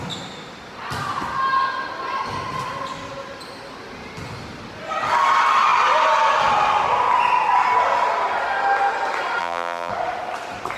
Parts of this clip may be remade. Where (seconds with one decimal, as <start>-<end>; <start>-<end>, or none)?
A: 9.4-9.9